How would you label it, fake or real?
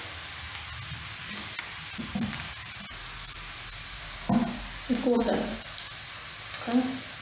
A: real